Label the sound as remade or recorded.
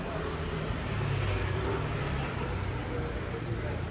recorded